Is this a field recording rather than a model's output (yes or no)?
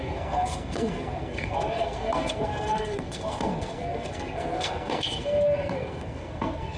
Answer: no